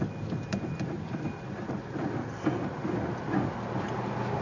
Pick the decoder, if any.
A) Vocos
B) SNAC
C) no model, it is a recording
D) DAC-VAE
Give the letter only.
C